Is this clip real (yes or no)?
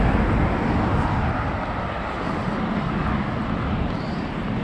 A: yes